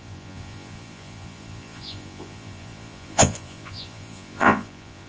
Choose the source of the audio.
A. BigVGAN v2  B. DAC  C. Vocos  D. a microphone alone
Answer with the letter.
C